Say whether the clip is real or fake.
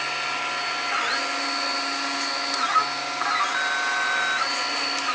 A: real